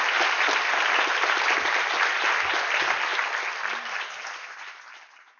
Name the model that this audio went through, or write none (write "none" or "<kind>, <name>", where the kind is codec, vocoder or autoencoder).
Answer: none